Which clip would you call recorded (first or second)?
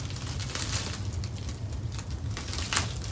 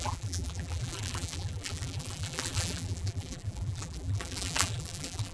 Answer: first